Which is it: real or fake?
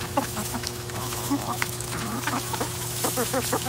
fake